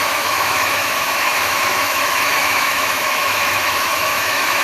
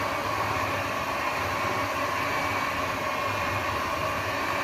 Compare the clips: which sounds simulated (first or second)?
first